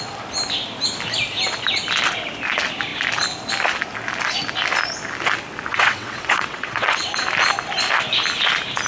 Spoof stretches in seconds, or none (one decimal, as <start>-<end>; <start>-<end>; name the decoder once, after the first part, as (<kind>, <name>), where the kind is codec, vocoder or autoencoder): 5.7-7.2 (vocoder, WaveNeXt)